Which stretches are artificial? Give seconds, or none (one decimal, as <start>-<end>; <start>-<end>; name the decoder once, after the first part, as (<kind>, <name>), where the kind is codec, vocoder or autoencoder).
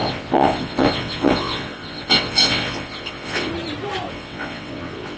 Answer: 0.0-3.5 (vocoder, WaveNeXt); 4.1-5.2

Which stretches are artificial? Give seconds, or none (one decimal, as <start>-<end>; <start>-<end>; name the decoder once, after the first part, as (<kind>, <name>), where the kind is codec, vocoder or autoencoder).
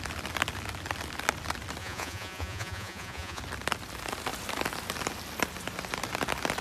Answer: 1.8-3.4 (vocoder, Vocos)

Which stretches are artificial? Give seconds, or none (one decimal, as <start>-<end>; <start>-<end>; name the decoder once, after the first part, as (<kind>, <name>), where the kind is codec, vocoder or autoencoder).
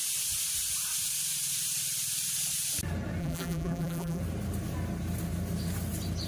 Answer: 3.2-4.2 (vocoder, BigVGAN v2)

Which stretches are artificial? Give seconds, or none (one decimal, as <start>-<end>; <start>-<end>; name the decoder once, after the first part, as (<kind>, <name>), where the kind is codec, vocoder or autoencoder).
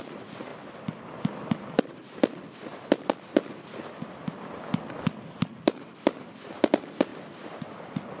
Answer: 0.0-0.5 (vocoder, BigVGAN v2); 1.8-2.7; 3.4-8.2